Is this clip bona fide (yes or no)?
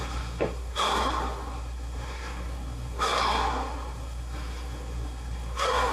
no